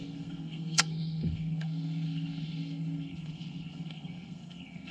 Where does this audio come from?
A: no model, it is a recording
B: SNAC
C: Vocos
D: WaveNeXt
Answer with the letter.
B